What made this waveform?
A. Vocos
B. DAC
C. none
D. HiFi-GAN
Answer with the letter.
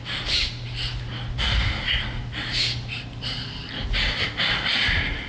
C